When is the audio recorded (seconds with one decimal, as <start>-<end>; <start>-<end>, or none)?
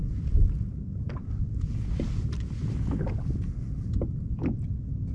0.0-5.1